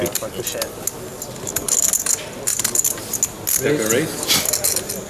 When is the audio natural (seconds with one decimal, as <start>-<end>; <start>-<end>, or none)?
0.0-5.1